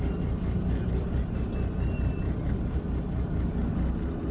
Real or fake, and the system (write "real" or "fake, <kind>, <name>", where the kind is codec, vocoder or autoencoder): real